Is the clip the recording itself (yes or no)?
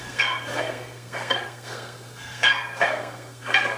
no